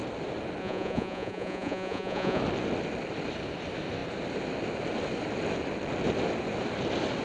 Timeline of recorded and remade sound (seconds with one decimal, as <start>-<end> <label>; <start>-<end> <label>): 0.0-0.6 recorded; 0.6-2.4 remade; 2.4-7.2 recorded